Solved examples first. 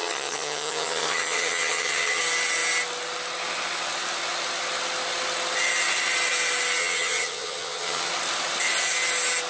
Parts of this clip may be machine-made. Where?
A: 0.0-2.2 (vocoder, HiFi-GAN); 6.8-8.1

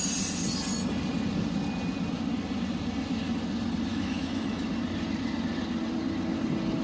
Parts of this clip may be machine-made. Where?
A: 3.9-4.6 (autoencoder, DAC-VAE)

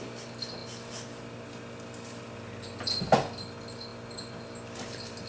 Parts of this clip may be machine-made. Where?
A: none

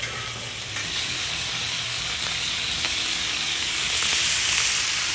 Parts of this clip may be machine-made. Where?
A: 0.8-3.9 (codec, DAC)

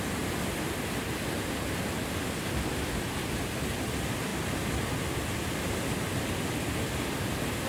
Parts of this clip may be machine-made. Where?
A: none